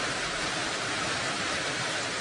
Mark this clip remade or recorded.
remade